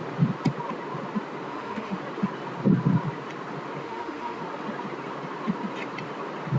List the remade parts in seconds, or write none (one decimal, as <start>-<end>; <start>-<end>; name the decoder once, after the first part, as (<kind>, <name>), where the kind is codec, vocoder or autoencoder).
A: 1.5-2.0 (autoencoder, DAC-VAE); 3.8-4.4